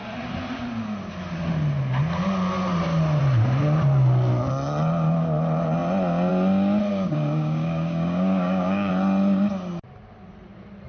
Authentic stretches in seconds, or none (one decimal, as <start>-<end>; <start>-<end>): 0.0-6.9; 8.9-10.9